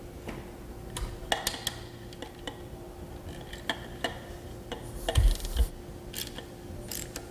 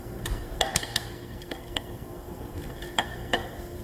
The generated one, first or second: second